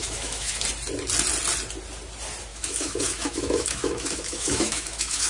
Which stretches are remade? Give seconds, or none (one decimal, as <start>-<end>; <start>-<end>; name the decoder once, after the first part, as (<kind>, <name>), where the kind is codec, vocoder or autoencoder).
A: 0.0-0.6 (autoencoder, DAC-VAE); 2.5-5.3